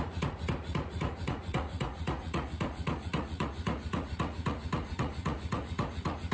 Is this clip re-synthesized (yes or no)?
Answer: yes